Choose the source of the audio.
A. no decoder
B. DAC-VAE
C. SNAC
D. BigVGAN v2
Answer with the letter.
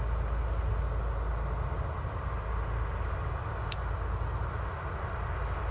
A